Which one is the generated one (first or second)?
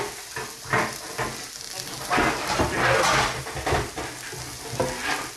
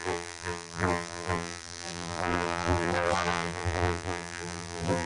second